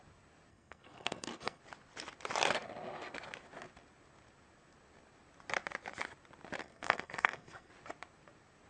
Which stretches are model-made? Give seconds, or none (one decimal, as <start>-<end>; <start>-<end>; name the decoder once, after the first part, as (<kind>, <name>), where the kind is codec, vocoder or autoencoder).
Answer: 0.5-1.6 (codec, SNAC); 6.6-7.7